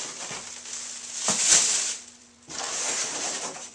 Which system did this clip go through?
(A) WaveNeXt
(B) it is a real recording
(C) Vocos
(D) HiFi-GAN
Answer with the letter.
B